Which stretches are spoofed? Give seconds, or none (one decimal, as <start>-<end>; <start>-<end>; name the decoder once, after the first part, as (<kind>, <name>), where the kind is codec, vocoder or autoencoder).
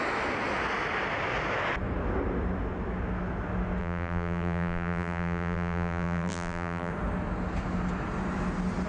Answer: 3.8-6.9 (vocoder, BigVGAN v2)